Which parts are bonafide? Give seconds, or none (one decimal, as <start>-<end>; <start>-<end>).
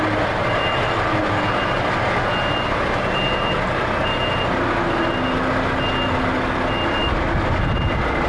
0.0-7.0; 7.6-8.3